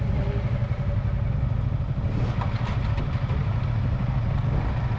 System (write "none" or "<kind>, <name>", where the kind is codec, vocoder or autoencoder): none